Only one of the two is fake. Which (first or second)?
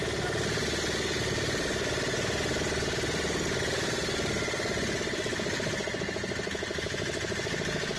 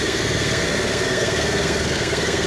second